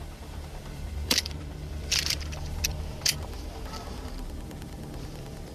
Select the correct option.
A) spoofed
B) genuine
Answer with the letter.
A